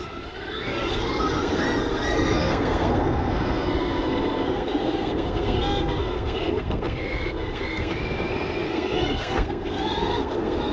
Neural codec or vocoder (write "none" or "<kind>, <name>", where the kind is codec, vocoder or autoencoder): codec, SNAC